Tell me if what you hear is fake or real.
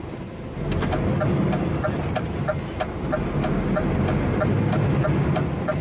real